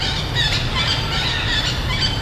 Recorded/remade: recorded